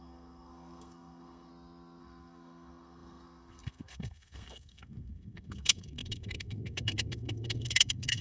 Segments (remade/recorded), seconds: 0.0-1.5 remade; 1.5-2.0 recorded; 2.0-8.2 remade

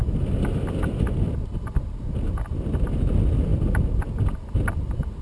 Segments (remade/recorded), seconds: 0.0-5.2 recorded

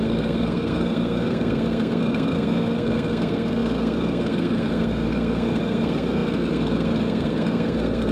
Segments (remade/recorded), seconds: 0.0-8.1 remade

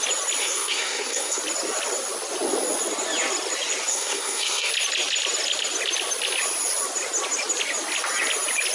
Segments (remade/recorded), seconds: 0.0-0.4 recorded; 0.4-1.4 remade; 1.4-3.9 recorded; 3.9-4.7 remade; 4.7-8.7 recorded

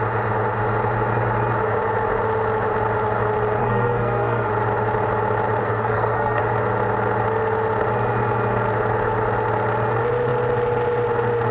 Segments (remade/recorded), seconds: 0.0-3.6 recorded; 3.6-4.5 remade; 4.5-5.6 recorded; 5.6-6.4 remade; 6.4-11.5 recorded

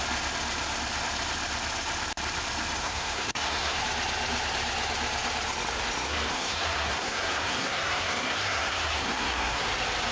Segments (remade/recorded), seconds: 0.0-2.8 recorded; 2.8-3.8 remade; 3.8-6.3 recorded; 6.3-9.6 remade; 9.6-10.1 recorded